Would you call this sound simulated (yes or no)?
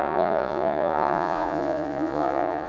yes